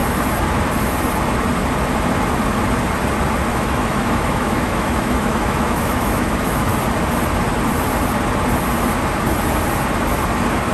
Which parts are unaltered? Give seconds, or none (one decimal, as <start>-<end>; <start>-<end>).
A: 0.0-3.5; 6.7-10.7

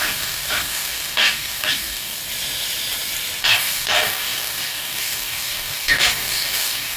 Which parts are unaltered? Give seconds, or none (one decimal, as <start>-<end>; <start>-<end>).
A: 2.2-3.4

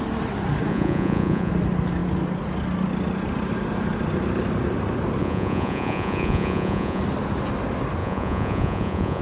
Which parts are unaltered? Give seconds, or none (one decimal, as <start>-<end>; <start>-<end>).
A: 0.0-0.7; 1.5-5.2; 7.0-8.0

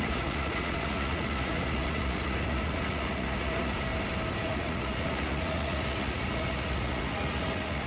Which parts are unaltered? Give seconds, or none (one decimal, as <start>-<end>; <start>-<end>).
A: 3.9-4.4

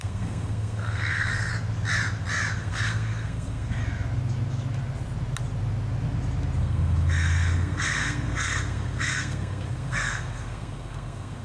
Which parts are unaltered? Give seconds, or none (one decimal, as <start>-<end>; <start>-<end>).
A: 1.5-2.6; 3.8-6.6